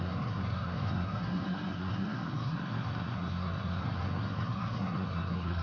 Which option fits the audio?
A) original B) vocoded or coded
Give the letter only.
B